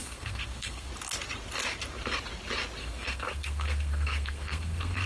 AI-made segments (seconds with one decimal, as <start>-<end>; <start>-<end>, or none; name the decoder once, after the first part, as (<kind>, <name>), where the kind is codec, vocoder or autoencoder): 0.0-0.9 (codec, SNAC); 2.8-5.1